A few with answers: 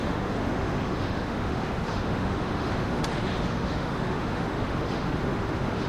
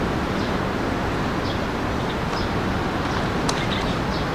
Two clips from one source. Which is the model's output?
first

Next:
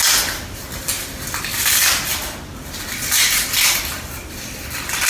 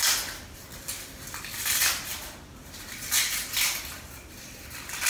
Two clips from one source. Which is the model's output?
second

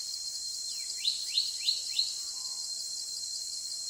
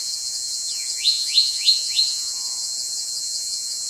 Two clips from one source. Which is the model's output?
second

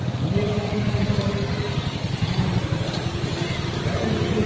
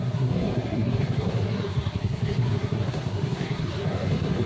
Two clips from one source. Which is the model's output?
second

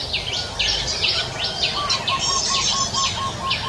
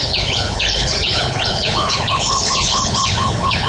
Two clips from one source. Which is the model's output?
second